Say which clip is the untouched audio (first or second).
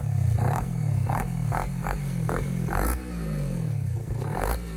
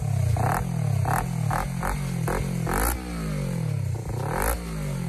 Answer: second